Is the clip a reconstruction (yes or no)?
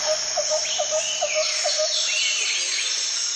no